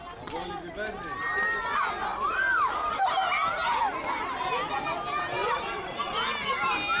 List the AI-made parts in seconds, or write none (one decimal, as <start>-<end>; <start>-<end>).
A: 2.1-2.9; 5.4-6.0